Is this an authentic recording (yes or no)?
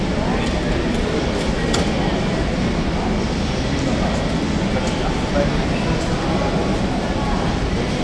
yes